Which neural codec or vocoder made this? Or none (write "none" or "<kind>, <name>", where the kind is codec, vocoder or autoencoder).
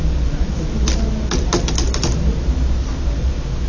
none